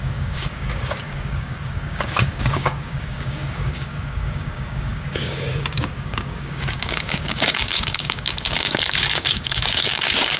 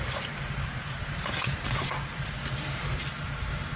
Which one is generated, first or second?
first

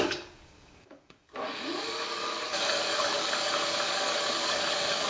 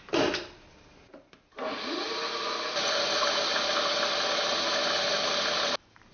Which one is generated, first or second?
first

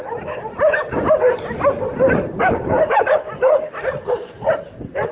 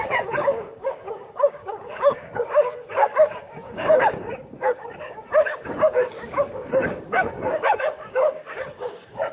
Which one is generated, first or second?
second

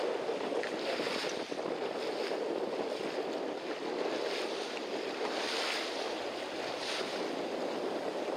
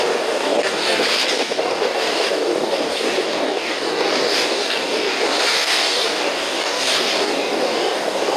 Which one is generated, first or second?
second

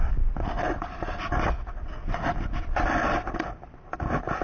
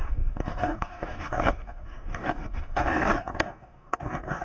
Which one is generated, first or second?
second